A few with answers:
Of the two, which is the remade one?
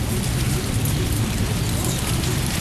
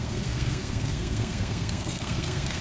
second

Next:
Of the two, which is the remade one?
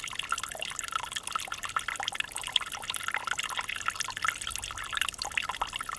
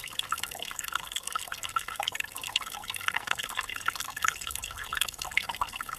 second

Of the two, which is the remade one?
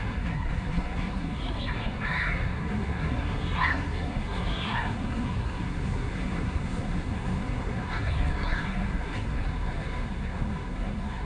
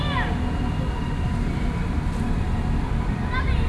first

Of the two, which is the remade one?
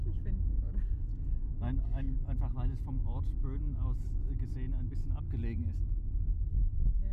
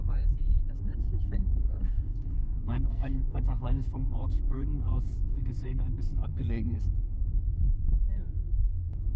second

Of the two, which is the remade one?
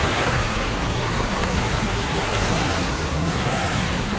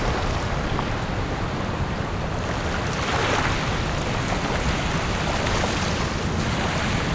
first